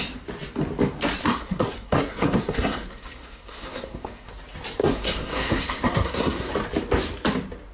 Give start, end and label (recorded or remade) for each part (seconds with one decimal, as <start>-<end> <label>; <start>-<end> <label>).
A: 0.0-1.2 recorded; 1.2-4.3 remade; 4.3-4.8 recorded; 4.8-6.5 remade; 6.5-7.7 recorded